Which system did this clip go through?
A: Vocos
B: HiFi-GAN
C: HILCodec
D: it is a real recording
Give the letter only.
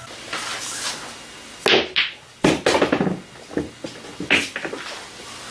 D